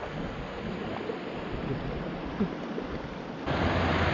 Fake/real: real